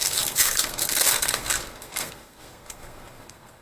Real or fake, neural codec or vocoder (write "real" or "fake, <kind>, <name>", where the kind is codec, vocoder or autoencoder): fake, codec, SNAC